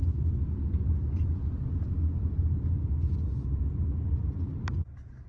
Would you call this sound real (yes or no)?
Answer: yes